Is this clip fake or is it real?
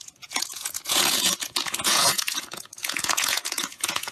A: fake